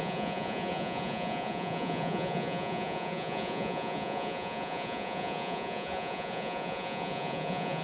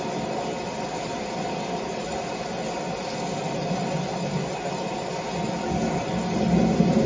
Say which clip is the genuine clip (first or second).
second